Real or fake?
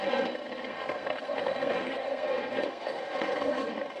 fake